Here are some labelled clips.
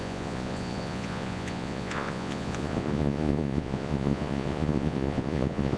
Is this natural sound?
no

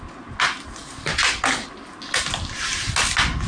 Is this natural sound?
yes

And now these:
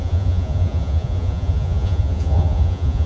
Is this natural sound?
no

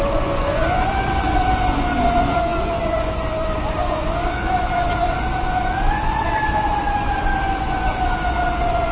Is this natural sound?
no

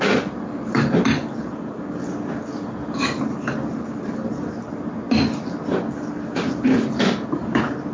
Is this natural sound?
yes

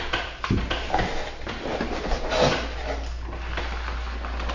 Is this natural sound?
yes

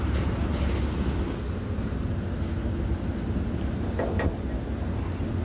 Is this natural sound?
yes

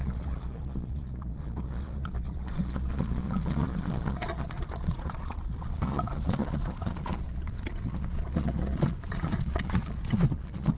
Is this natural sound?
no